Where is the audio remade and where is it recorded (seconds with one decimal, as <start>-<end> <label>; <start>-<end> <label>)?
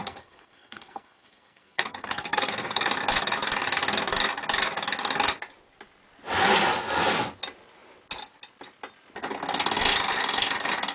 0.0-2.9 remade; 2.9-10.9 recorded